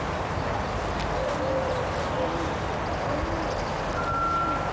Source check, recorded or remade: recorded